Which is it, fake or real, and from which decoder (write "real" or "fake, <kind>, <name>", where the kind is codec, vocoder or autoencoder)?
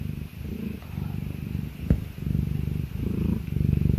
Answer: real